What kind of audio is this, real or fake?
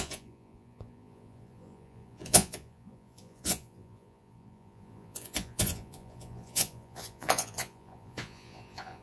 fake